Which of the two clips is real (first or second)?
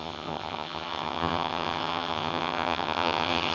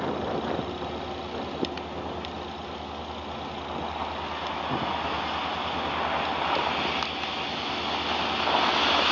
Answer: second